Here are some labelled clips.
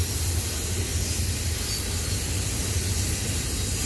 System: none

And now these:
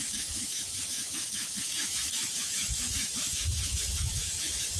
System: autoencoder, DAC-VAE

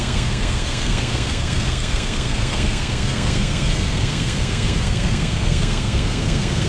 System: codec, SNAC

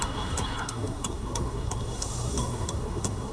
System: codec, SNAC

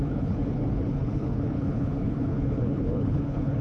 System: codec, HILCodec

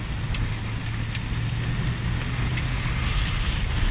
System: none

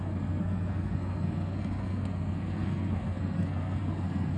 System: codec, SNAC